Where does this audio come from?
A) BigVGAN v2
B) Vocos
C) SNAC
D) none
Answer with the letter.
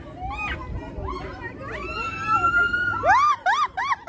D